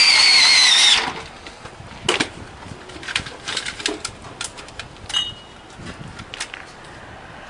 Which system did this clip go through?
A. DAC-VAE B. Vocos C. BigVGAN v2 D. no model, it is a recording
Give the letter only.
D